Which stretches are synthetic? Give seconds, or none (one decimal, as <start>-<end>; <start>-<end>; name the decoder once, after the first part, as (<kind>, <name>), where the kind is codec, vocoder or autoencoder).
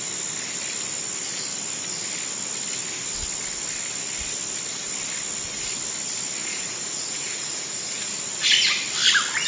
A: 6.4-8.1 (vocoder, Vocos)